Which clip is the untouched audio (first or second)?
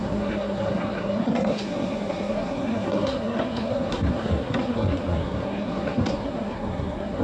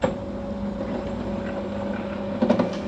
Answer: second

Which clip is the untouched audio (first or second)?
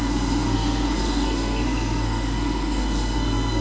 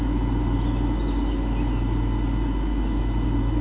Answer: second